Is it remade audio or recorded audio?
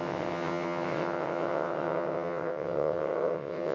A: remade